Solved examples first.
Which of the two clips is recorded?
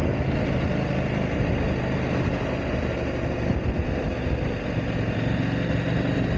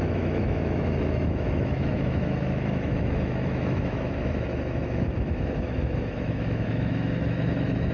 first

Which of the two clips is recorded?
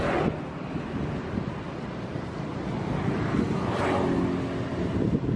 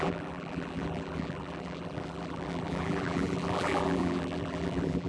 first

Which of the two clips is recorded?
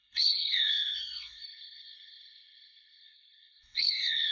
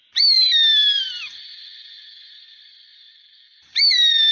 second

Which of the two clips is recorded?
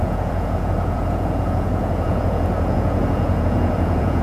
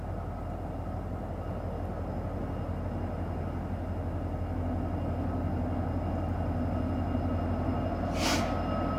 second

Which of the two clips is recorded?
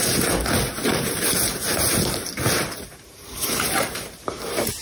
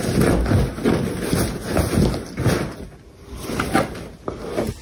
second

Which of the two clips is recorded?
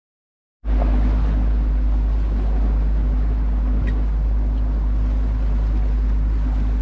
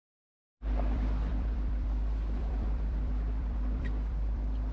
first